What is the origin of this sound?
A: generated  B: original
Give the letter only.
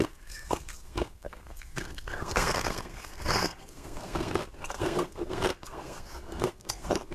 A